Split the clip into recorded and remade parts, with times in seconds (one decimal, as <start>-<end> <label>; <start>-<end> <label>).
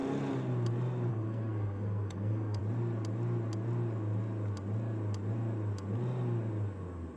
0.0-1.1 recorded; 1.1-2.6 remade; 2.6-7.2 recorded